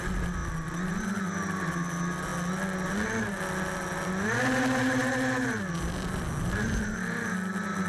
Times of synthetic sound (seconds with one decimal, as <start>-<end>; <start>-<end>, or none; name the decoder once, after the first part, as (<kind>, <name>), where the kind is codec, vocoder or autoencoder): none